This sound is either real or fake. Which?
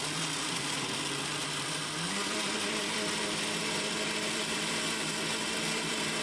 fake